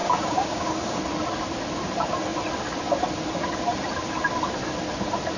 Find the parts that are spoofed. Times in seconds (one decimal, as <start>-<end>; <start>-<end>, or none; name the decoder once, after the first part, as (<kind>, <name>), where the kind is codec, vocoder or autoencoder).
0.0-1.0 (codec, DAC)